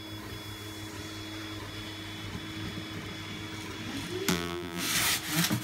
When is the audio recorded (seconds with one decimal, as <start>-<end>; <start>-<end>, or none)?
0.0-4.3; 4.8-5.6